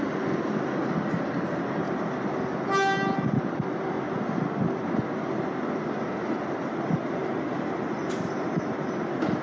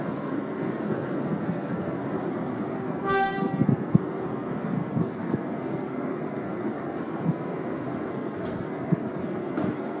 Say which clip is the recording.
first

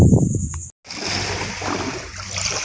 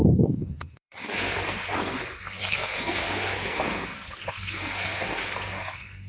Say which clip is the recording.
first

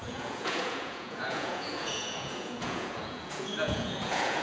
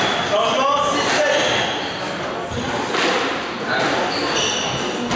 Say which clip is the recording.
second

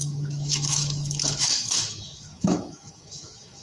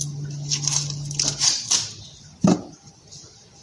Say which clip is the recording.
second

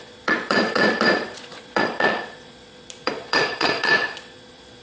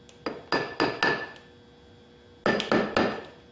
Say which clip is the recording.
second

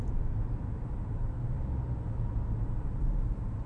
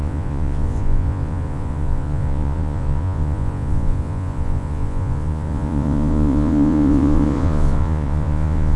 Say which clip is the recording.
first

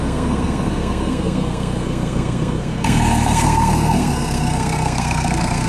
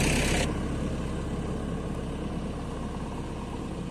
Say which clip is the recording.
second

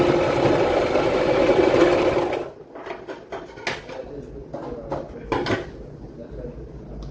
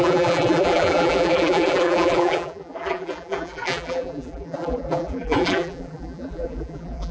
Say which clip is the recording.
first